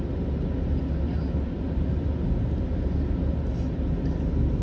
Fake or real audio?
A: real